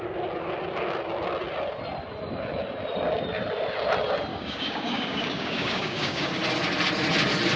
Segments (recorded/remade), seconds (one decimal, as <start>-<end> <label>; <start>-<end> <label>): 0.0-4.3 recorded; 4.3-6.3 remade; 6.3-7.6 recorded